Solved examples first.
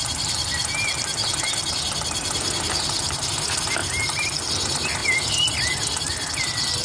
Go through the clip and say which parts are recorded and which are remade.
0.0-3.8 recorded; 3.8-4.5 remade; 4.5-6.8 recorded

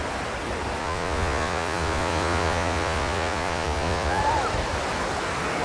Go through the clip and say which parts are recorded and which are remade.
0.0-0.8 recorded; 0.8-4.2 remade; 4.2-5.6 recorded

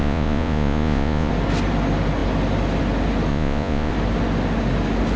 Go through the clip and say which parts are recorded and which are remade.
0.0-1.3 remade; 1.3-3.3 recorded; 3.3-3.9 remade; 3.9-5.2 recorded

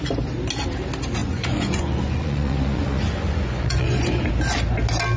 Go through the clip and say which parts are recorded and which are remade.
0.0-1.2 recorded; 1.2-4.3 remade; 4.3-5.2 recorded

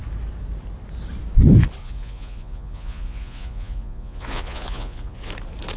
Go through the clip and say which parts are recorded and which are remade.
0.0-1.8 recorded; 1.8-5.3 remade; 5.3-5.8 recorded

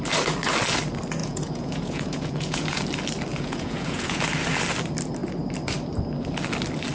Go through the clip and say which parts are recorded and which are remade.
0.0-1.2 recorded; 1.2-2.8 remade; 2.8-3.3 recorded; 3.3-4.2 remade; 4.2-6.9 recorded

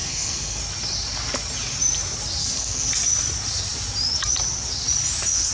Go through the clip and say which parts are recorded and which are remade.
0.0-0.6 remade; 0.6-2.4 recorded; 2.4-2.9 remade; 2.9-5.5 recorded